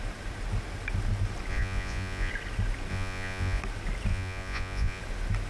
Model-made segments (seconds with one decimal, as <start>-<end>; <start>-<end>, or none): 1.5-2.3; 2.9-3.6; 4.1-5.0